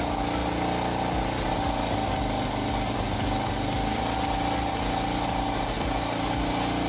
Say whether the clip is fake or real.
real